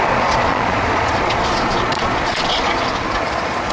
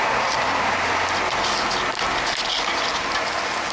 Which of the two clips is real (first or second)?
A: second